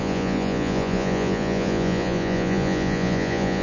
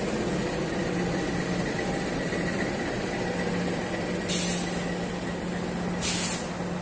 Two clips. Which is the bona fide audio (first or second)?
second